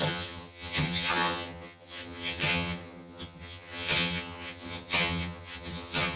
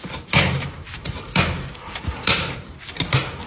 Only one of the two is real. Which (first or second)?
second